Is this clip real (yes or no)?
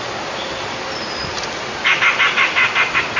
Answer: no